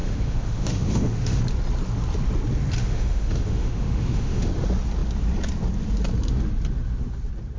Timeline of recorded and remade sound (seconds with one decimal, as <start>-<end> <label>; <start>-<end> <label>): 0.0-1.4 remade; 1.4-2.8 recorded; 2.8-4.5 remade; 4.5-7.6 recorded